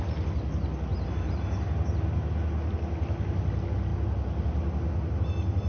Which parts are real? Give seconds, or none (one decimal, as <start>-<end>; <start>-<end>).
0.0-0.9; 1.4-5.7